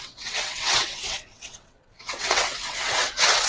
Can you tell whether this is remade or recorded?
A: remade